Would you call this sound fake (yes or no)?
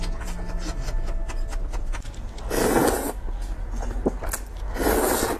no